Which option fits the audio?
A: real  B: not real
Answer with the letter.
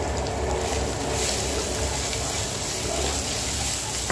A